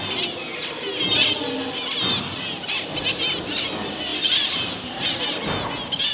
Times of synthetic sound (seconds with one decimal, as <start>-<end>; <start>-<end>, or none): 4.1-5.2